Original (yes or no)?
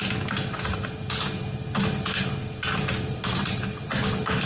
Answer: yes